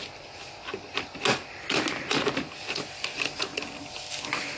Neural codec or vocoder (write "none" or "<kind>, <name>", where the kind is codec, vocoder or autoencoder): none